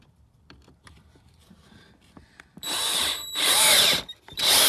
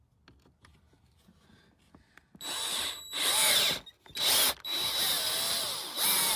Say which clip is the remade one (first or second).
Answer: first